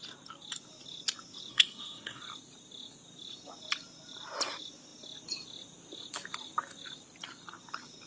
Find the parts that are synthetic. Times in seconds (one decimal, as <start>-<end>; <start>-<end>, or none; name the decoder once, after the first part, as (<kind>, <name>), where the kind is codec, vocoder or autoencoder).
1.5-2.2 (codec, SNAC)